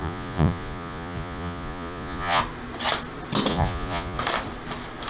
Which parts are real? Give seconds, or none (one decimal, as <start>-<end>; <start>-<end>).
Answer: 2.4-3.5; 4.2-5.1